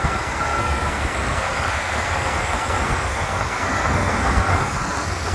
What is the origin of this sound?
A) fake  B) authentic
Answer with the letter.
A